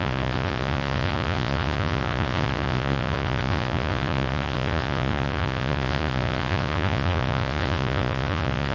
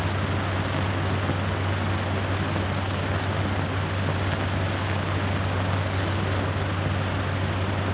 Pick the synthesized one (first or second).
first